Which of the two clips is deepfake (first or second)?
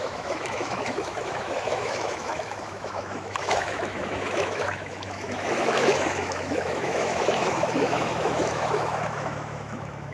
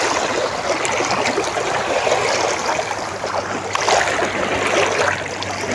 first